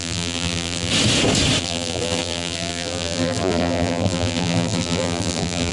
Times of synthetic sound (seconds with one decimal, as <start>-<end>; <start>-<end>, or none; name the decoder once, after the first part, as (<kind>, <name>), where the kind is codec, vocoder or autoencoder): 0.0-0.9 (vocoder, BigVGAN v2); 1.6-5.7